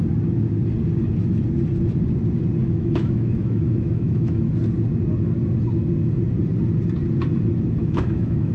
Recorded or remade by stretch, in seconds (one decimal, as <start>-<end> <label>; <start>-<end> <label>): 0.0-2.6 recorded; 2.6-4.4 remade; 4.4-7.8 recorded; 7.8-8.5 remade